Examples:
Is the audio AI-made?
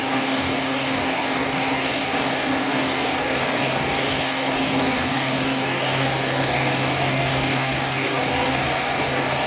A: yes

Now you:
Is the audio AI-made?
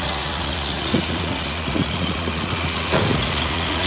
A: yes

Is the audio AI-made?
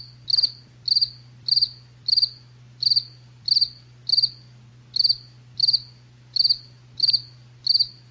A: no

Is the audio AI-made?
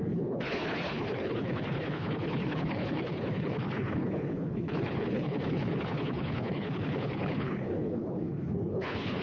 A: yes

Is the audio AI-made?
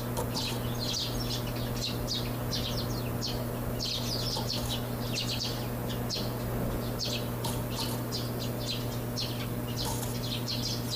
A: no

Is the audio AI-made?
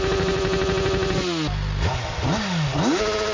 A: no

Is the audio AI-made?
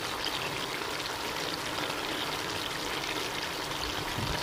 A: no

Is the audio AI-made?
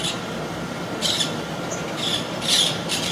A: no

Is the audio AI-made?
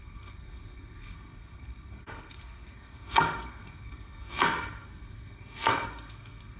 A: yes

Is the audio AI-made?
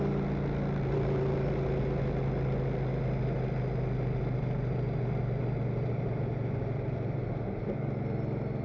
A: no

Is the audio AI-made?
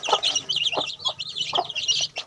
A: no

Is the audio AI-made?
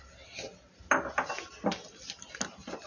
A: no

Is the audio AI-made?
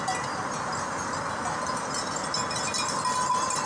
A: yes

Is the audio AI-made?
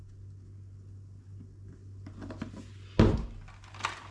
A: no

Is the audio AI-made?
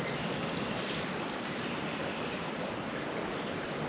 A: no